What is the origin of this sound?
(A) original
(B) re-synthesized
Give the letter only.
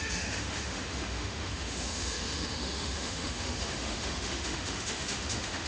B